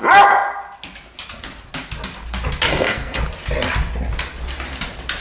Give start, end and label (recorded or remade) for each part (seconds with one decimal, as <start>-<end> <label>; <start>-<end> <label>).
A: 0.0-2.7 recorded; 2.7-3.2 remade; 3.2-5.2 recorded

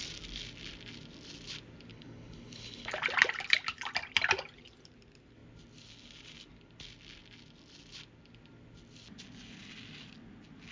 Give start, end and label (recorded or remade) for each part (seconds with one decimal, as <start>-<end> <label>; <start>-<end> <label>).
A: 0.0-1.9 recorded; 1.9-2.9 remade; 2.9-10.7 recorded

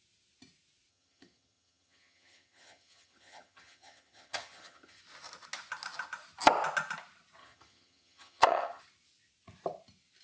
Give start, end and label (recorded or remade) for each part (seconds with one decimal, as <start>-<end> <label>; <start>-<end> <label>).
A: 0.0-0.9 recorded; 0.9-5.0 remade; 5.0-7.4 recorded; 7.4-8.8 remade; 8.8-10.2 recorded

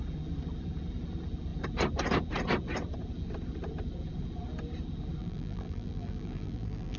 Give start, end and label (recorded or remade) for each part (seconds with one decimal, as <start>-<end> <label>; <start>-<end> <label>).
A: 0.0-5.2 recorded; 5.2-7.0 remade

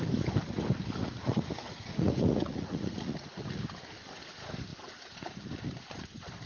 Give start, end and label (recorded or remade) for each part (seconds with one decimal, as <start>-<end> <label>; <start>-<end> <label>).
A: 0.0-1.0 recorded; 1.0-3.6 remade; 3.6-4.7 recorded; 4.7-5.4 remade; 5.4-6.5 recorded

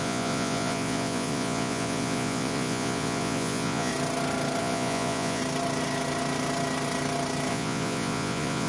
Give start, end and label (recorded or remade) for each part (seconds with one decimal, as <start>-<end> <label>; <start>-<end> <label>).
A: 0.0-3.9 remade; 3.9-4.6 recorded; 4.6-5.4 remade; 5.4-7.5 recorded; 7.5-8.7 remade

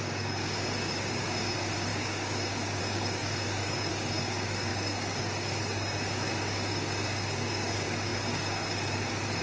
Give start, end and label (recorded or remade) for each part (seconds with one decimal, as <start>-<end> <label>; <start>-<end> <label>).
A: 0.0-9.4 remade